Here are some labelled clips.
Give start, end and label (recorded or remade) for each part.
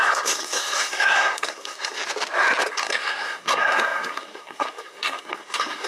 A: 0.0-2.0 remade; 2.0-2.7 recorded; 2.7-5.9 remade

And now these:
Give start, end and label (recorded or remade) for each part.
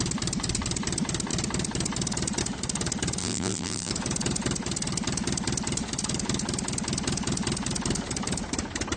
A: 0.0-3.2 recorded; 3.2-3.9 remade; 3.9-9.0 recorded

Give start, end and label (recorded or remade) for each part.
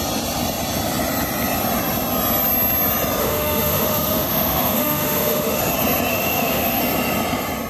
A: 0.0-3.2 recorded; 3.2-5.6 remade; 5.6-6.1 recorded; 6.1-6.8 remade; 6.8-7.7 recorded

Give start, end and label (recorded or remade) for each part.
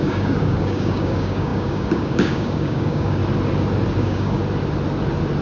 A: 0.0-3.2 remade; 3.2-4.0 recorded; 4.0-4.4 remade; 4.4-5.4 recorded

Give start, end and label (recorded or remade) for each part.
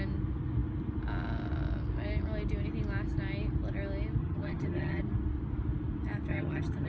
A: 0.0-4.2 recorded; 4.2-5.0 remade; 5.0-6.3 recorded; 6.3-6.9 remade